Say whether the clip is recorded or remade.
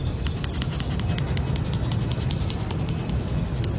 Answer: recorded